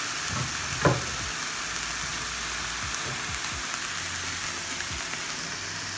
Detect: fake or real real